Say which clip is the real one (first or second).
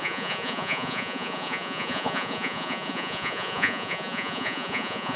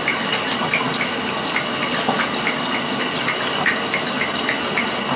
second